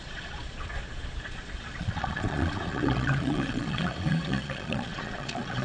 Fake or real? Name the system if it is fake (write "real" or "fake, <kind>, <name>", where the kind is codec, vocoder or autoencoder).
fake, vocoder, Vocos